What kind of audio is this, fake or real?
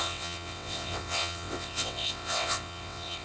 fake